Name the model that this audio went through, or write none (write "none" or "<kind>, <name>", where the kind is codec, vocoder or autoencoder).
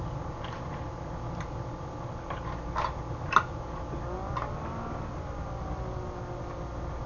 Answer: none